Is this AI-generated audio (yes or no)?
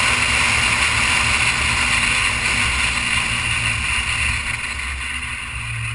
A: no